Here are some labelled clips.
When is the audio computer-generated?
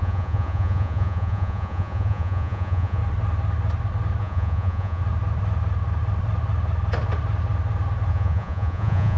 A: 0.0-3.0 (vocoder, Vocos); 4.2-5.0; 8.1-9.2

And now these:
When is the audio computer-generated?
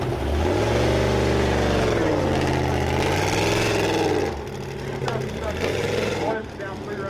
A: 5.0-6.3 (vocoder, BigVGAN v2)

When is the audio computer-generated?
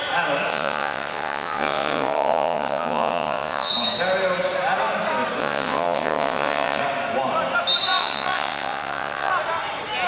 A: 0.5-3.7 (vocoder, WaveNeXt); 5.4-6.8; 7.9-9.3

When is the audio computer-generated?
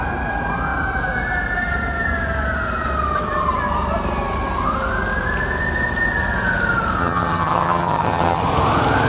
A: 7.0-8.4 (vocoder, HiFi-GAN)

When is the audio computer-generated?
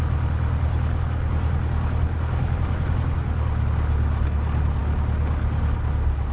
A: none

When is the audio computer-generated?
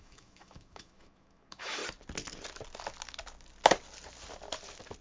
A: 0.0-1.8 (autoencoder, DAC-VAE)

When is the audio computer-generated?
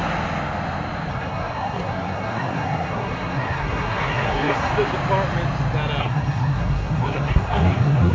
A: 1.1-4.7 (codec, SNAC); 6.0-8.1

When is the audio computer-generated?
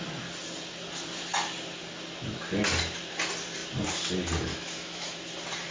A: 4.5-5.3 (autoencoder, DAC-VAE)